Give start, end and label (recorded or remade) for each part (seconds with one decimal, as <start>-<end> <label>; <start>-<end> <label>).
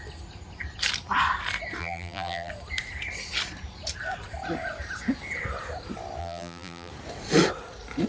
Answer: 0.0-1.8 recorded; 1.8-2.5 remade; 2.5-6.2 recorded; 6.2-6.9 remade; 6.9-8.1 recorded